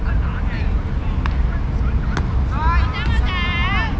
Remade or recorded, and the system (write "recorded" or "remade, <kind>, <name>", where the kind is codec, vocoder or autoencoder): recorded